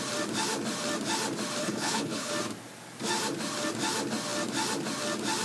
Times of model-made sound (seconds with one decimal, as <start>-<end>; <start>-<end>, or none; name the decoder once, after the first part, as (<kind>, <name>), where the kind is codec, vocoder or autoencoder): 1.6-2.3 (codec, HILCodec)